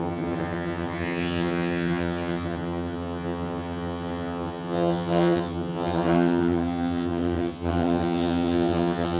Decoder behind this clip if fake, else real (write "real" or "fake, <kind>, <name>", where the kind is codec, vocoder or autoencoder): fake, vocoder, HiFi-GAN